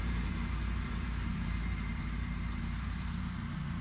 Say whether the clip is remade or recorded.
remade